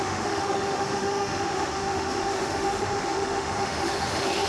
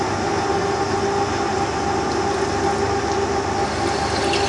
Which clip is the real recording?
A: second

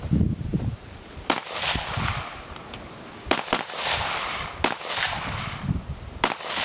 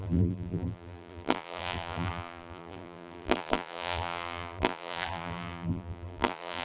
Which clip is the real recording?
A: first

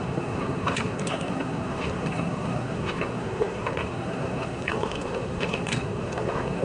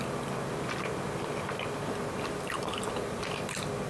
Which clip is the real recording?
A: second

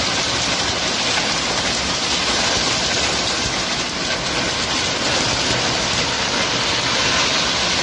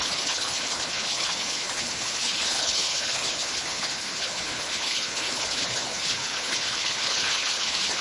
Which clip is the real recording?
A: first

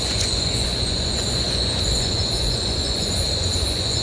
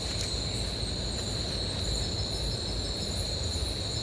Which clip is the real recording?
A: second